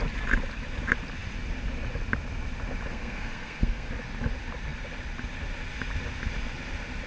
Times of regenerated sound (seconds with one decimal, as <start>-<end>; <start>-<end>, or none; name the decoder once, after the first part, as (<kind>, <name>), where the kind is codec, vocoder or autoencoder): 2.9-3.9 (codec, SNAC)